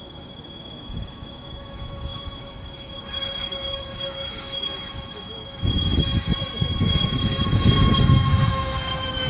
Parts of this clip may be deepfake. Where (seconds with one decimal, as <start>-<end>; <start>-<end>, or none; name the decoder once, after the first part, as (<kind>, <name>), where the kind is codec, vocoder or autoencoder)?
0.0-6.3 (autoencoder, DAC-VAE); 6.8-9.3